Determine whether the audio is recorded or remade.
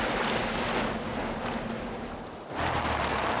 recorded